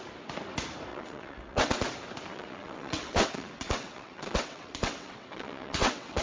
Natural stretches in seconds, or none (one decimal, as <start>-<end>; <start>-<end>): 0.0-0.9; 1.8-2.3